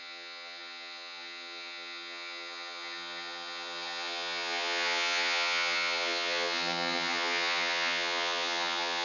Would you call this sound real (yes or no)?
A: no